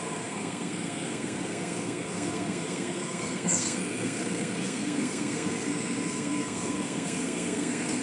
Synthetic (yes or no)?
yes